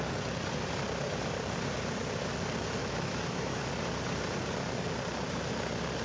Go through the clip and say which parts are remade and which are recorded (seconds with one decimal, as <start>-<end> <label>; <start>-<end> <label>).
0.0-2.8 recorded; 2.8-3.6 remade; 3.6-6.0 recorded